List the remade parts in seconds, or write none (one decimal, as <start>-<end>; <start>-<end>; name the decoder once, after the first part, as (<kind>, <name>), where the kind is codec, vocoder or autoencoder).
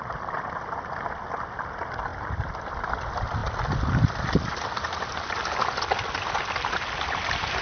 none